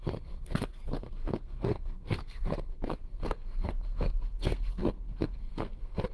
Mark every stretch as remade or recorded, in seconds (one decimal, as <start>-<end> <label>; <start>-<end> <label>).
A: 0.0-6.1 remade